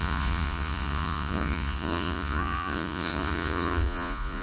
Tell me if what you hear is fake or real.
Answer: fake